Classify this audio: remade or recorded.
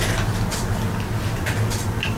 recorded